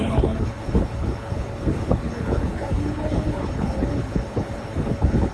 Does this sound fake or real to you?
fake